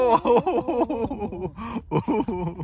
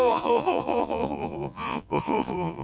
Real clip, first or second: first